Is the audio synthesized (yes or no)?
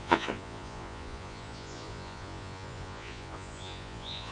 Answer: yes